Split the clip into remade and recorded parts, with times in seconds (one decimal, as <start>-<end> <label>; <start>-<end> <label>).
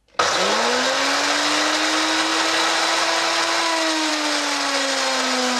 0.0-5.6 recorded